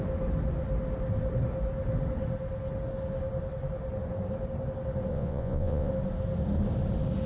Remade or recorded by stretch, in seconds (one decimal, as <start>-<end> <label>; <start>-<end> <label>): 0.0-5.1 recorded; 5.1-5.9 remade; 5.9-7.3 recorded

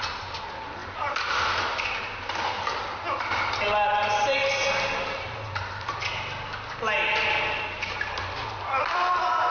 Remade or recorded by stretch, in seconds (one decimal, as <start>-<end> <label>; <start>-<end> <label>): 0.0-9.5 recorded